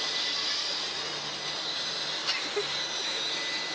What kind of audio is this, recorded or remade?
recorded